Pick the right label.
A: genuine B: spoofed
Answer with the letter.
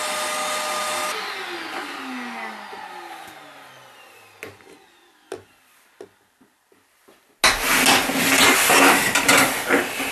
A